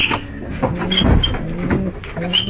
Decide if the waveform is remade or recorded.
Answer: recorded